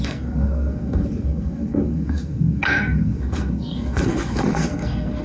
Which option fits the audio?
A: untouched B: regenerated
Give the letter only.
B